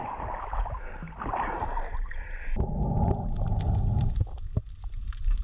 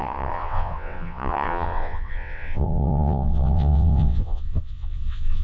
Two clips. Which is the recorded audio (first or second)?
first